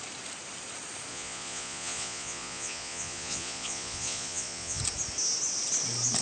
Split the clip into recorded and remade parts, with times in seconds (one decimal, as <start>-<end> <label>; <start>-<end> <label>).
0.0-1.1 recorded; 1.1-4.8 remade; 4.8-6.2 recorded